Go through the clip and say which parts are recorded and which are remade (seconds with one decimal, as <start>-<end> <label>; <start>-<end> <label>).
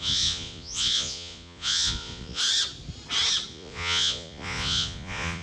0.0-2.4 remade; 2.4-3.5 recorded; 3.5-5.4 remade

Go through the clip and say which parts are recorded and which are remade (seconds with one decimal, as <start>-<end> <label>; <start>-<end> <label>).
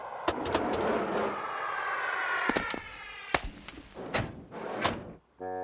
0.0-5.6 recorded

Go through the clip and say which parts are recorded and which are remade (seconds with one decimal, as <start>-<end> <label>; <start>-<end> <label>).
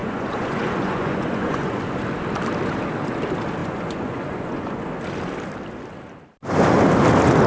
0.0-1.8 remade; 1.8-3.6 recorded; 3.6-4.9 remade; 4.9-7.5 recorded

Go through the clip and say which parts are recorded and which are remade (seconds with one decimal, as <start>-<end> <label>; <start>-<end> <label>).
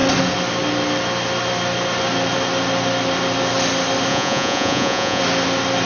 0.0-4.1 recorded; 4.1-5.2 remade; 5.2-5.9 recorded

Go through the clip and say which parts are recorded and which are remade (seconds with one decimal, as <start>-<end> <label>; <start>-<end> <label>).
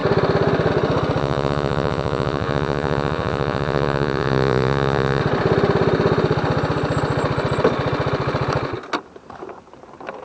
0.0-1.2 recorded; 1.2-5.2 remade; 5.2-10.2 recorded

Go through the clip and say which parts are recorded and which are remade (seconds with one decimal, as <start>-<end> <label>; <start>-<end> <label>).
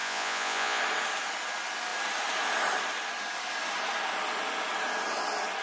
0.0-0.8 remade; 0.8-5.6 recorded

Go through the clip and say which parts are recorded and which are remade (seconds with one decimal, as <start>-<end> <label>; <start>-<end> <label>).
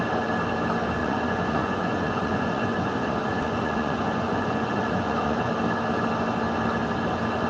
0.0-1.0 recorded; 1.0-5.5 remade; 5.5-7.5 recorded